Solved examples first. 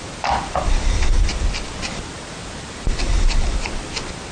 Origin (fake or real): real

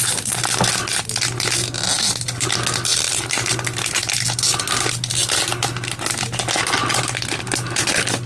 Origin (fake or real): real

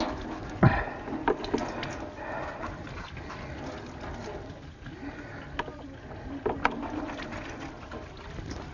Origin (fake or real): real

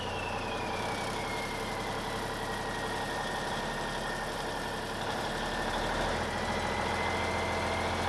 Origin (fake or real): real